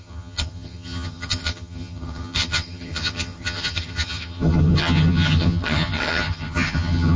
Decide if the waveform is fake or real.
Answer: fake